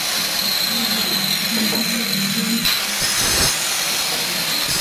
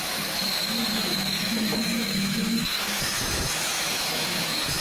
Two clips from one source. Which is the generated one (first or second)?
second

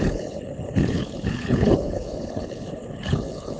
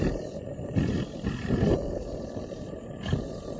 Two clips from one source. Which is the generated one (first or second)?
first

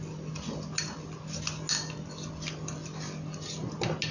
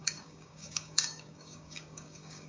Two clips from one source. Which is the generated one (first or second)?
second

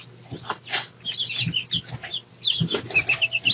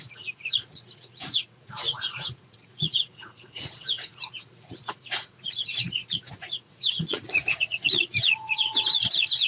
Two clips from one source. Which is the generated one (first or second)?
second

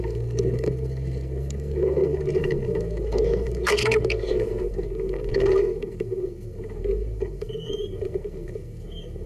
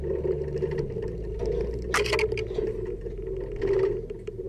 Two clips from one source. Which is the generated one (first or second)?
first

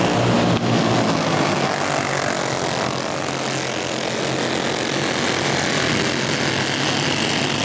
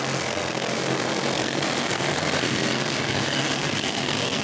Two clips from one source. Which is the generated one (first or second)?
second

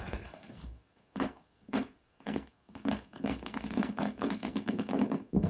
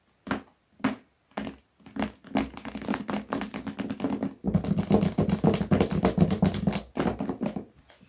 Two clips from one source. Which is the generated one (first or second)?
first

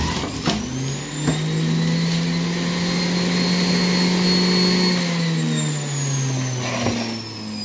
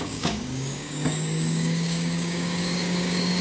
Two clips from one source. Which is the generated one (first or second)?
second